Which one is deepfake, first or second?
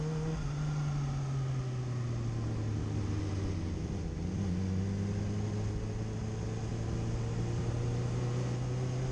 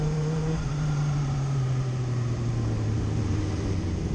second